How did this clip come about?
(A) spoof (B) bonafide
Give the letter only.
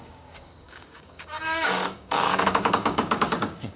A